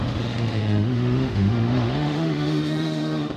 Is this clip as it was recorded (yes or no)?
no